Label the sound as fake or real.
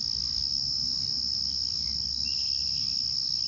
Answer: real